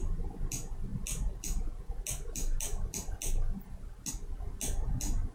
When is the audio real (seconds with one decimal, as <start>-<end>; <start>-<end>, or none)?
0.0-5.3